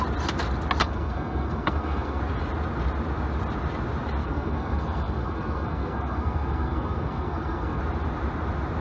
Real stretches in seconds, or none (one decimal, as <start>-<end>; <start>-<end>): 0.0-0.8; 2.2-4.2; 7.8-8.8